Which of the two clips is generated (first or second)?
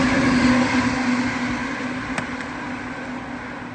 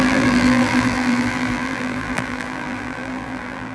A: second